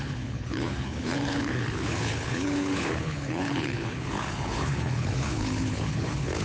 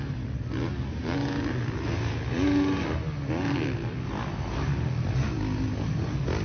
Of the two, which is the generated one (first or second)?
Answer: first